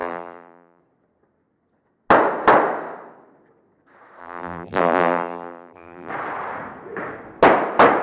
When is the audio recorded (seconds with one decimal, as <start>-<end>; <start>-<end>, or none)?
0.8-4.2; 6.1-8.0